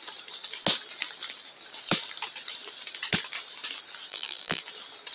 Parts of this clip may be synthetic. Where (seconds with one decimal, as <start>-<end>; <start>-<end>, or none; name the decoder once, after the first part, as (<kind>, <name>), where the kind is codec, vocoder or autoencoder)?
4.1-4.6 (vocoder, BigVGAN v2)